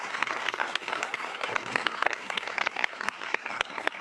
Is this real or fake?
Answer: fake